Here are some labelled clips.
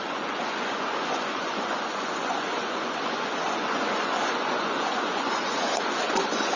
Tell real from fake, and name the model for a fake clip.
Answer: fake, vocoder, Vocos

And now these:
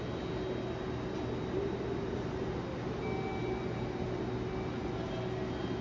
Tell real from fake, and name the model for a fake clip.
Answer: real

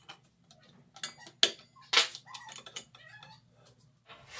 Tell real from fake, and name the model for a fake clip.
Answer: real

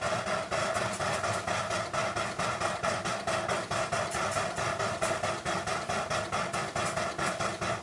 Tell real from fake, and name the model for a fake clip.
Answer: real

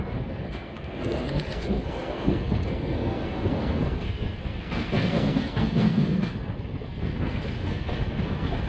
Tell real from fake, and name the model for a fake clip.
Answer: fake, codec, SNAC